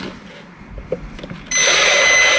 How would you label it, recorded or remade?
recorded